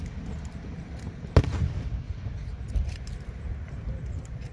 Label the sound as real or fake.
real